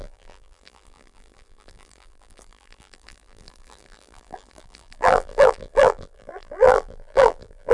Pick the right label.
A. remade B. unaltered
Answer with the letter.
A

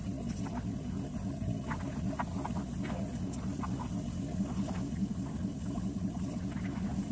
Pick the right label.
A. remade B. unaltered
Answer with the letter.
B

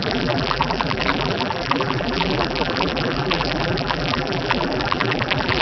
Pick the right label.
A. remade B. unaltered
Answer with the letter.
A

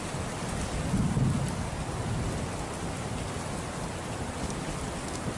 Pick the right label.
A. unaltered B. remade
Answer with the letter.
A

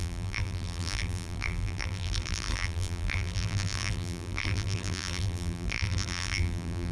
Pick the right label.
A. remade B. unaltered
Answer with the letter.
A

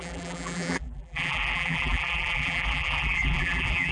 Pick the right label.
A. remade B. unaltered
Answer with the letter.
A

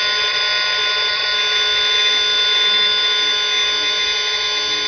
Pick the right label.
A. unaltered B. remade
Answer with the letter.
A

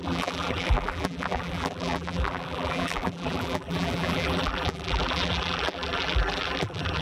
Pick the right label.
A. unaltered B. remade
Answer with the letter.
B